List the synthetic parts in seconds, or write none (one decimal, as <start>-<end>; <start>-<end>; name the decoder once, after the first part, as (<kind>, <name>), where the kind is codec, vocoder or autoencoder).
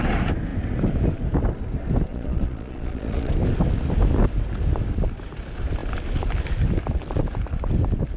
2.1-3.3 (vocoder, Vocos)